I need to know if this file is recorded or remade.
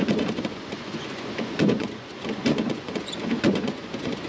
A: remade